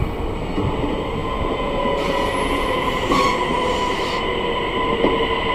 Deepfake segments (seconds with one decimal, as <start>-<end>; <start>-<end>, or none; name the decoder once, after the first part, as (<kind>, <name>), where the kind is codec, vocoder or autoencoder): 1.2-3.2 (vocoder, Vocos)